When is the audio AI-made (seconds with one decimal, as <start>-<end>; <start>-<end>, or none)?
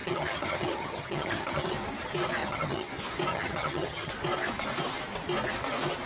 0.0-1.7; 2.4-2.9; 3.3-4.1